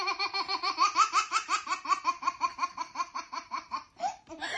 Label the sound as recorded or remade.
remade